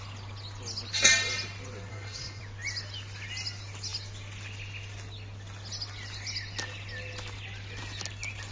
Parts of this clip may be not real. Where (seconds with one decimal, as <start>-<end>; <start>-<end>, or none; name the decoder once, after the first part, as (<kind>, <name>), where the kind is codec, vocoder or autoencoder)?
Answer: 1.9-2.4 (codec, SNAC)